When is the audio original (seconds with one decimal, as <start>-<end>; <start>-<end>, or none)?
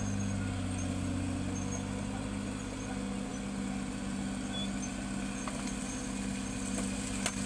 0.0-7.5